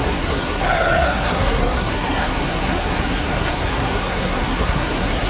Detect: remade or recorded remade